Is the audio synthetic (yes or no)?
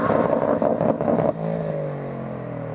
no